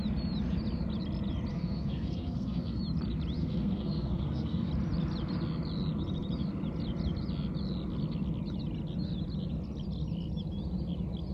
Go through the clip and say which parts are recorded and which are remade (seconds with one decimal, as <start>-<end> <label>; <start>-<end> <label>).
0.0-1.5 recorded; 1.5-2.8 remade; 2.8-3.4 recorded; 3.4-4.7 remade; 4.7-11.3 recorded